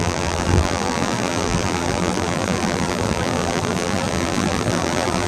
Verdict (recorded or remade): remade